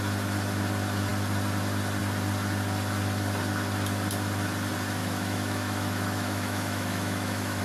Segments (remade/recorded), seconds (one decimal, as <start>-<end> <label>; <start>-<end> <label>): 0.0-5.0 recorded; 5.0-7.6 remade